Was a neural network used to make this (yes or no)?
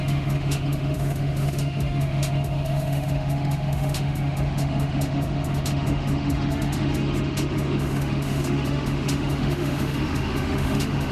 yes